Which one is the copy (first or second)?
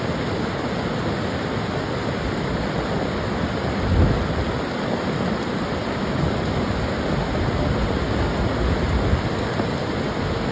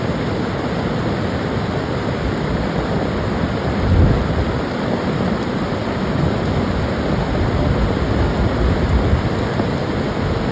second